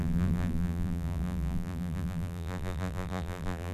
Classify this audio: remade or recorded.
remade